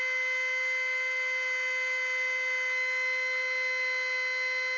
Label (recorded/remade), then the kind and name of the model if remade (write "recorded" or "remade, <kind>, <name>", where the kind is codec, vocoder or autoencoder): recorded